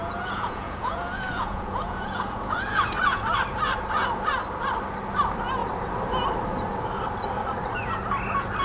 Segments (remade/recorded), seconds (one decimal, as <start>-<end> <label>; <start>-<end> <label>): 0.0-3.2 remade; 3.2-8.6 recorded